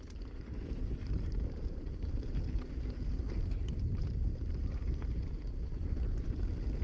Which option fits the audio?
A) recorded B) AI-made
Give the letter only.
B